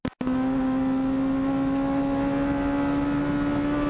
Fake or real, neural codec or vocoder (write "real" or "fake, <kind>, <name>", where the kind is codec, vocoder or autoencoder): real